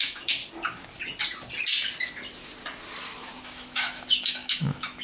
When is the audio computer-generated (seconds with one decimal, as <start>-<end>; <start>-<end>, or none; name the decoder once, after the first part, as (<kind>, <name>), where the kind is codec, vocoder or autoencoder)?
0.0-0.4 (autoencoder, DAC-VAE); 3.4-5.0